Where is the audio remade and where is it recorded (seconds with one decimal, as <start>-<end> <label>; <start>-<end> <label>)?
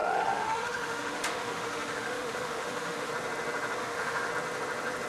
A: 0.0-3.1 remade; 3.1-3.8 recorded; 3.8-4.3 remade; 4.3-5.1 recorded